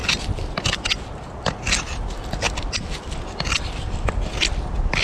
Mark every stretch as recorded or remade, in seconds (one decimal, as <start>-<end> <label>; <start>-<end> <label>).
0.0-5.0 recorded